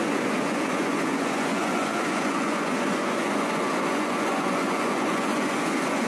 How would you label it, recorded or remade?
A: remade